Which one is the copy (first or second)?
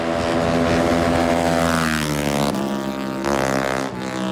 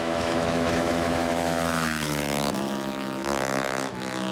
second